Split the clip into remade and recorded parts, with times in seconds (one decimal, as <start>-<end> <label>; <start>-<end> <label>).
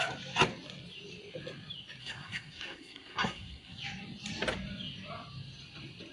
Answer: 0.0-2.0 recorded; 2.0-3.8 remade; 3.8-6.1 recorded